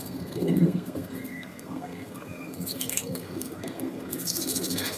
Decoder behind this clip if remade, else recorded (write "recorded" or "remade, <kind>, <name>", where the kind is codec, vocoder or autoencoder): remade, codec, SNAC